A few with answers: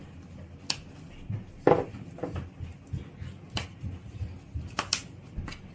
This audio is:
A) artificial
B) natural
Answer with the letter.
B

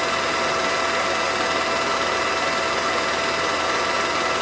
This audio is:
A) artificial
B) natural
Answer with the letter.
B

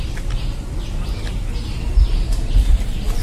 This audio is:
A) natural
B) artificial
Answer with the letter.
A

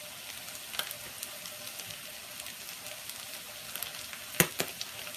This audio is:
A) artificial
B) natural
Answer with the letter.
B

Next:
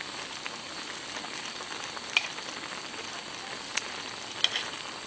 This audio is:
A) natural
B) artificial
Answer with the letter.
A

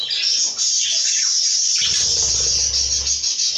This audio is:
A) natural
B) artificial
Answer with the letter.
A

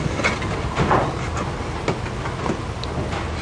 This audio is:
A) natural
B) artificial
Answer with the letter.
A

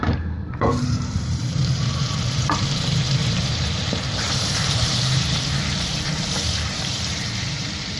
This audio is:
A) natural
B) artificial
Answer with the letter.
B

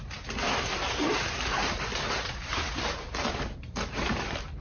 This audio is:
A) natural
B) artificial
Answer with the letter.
B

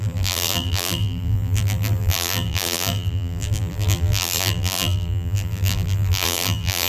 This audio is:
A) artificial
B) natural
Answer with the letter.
A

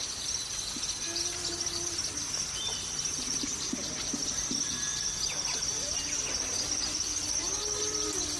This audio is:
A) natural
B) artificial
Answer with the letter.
A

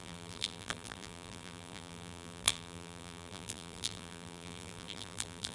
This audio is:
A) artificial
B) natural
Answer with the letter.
A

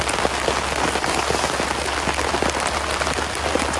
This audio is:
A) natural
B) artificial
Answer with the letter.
A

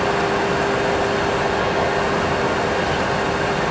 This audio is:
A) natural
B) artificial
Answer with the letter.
A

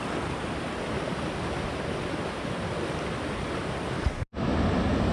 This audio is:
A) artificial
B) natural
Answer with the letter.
B